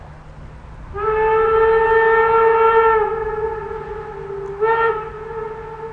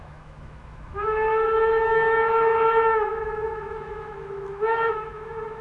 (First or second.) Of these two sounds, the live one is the first